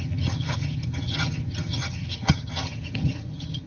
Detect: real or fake fake